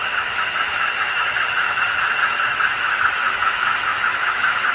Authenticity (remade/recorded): remade